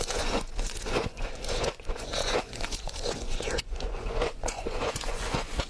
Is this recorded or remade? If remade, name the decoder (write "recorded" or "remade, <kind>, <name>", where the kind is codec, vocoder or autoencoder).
remade, vocoder, Vocos